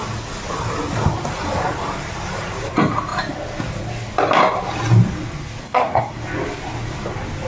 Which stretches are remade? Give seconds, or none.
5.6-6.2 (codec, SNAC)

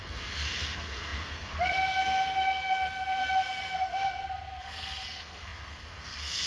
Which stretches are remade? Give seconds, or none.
0.0-6.5 (codec, SNAC)

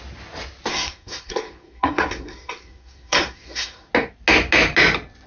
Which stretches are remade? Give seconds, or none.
0.7-3.9 (codec, SNAC)